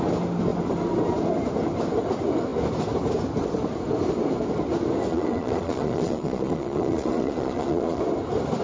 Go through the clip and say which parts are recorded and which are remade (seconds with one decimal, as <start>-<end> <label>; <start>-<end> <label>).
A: 0.0-5.1 recorded; 5.1-8.0 remade; 8.0-8.6 recorded